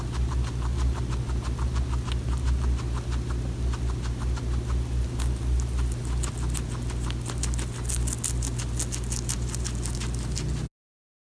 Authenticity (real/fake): real